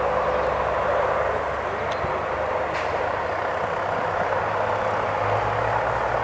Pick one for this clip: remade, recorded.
recorded